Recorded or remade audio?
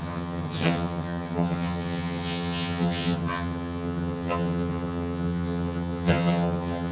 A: remade